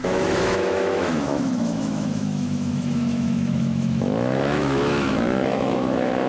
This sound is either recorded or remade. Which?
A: remade